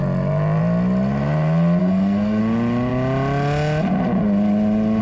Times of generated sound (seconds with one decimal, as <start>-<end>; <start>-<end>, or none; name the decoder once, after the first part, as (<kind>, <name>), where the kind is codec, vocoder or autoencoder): 1.8-2.4 (codec, SNAC)